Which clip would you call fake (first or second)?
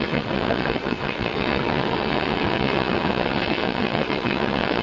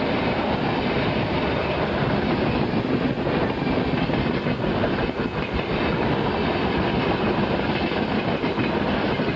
first